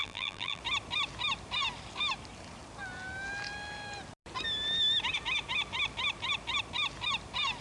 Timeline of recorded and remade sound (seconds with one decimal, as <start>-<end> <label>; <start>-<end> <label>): 0.0-0.6 remade; 0.6-7.6 recorded